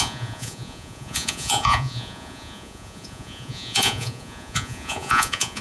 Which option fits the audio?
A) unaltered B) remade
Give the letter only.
B